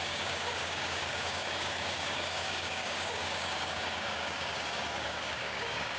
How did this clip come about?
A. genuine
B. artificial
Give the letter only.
B